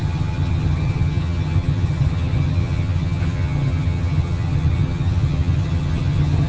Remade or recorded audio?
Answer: remade